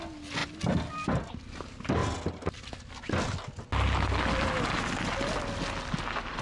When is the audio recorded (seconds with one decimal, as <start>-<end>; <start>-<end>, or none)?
0.0-6.4